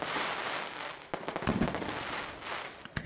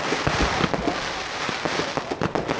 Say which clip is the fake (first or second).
second